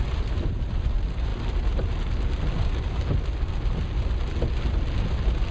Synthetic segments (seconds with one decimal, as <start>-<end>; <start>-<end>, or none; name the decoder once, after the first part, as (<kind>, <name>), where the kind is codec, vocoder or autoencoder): none